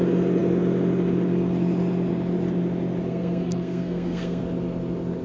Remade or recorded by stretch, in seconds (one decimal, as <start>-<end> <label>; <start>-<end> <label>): 0.0-3.1 recorded; 3.1-4.4 remade; 4.4-5.2 recorded